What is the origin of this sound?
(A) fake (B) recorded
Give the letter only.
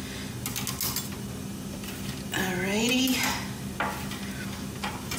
B